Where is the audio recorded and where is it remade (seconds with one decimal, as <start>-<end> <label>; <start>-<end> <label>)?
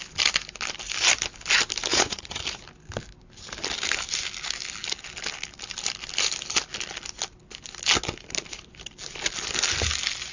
0.0-1.9 recorded; 1.9-2.4 remade; 2.4-10.3 recorded